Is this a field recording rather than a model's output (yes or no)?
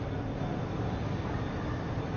yes